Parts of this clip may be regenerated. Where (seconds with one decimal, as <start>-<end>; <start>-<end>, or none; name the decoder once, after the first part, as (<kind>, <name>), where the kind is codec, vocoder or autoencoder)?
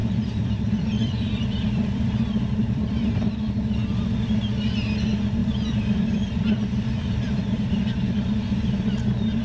0.0-3.3 (vocoder, BigVGAN v2); 5.4-7.8